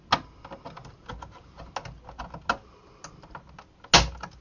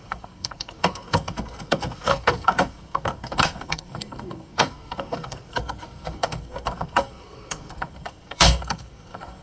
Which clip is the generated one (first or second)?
second